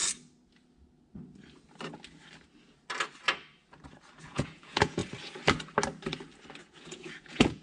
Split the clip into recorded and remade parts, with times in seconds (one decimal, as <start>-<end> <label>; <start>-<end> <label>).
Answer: 0.0-4.2 recorded; 4.2-5.0 remade; 5.0-6.6 recorded; 6.6-7.6 remade